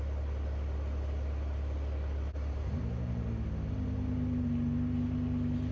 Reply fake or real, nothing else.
real